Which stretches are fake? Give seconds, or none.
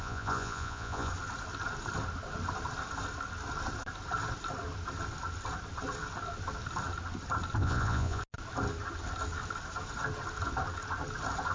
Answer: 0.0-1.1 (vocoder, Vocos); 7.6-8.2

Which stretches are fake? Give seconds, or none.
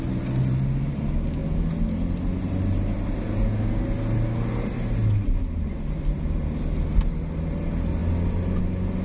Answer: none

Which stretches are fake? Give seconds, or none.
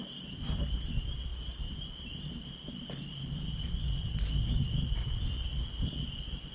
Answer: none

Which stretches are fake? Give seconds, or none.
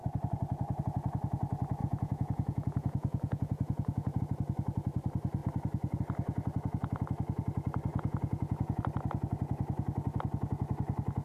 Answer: 1.8-4.2 (vocoder, Vocos); 7.9-8.8